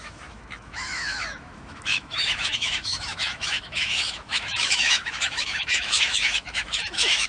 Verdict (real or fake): fake